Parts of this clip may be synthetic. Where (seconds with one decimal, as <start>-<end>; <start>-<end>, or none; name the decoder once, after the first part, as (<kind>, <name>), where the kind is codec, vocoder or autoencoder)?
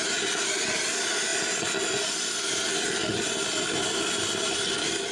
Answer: none